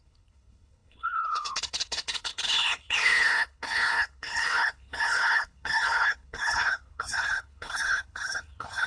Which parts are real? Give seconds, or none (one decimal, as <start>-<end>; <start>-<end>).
none